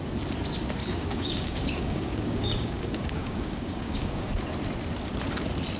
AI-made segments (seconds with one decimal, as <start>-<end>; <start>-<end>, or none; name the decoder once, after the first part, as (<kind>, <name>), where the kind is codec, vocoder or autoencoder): 0.8-4.3 (codec, DAC)